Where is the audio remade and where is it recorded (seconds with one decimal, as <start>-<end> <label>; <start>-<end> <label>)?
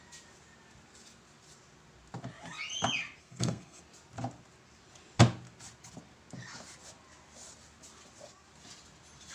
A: 0.0-3.2 recorded; 3.2-3.8 remade; 3.8-9.3 recorded